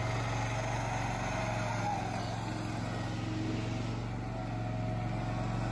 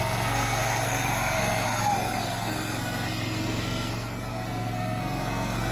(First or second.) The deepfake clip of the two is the second